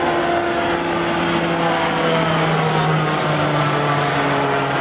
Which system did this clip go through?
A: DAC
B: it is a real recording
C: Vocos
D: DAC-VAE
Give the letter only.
B